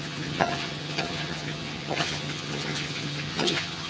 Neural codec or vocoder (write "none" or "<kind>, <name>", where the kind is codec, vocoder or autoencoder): vocoder, HiFi-GAN